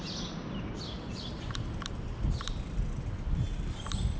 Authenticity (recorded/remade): recorded